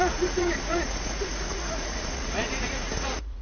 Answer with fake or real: fake